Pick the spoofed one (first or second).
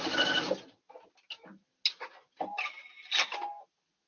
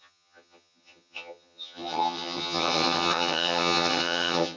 second